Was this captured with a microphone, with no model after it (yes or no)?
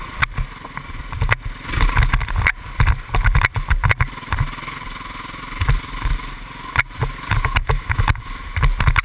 yes